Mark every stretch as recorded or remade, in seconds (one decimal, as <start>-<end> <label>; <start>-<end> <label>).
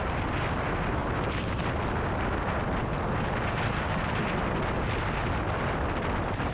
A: 0.0-6.5 recorded